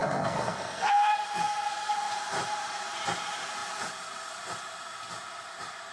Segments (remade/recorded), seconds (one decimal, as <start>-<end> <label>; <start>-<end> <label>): 0.0-2.1 remade; 2.1-5.9 recorded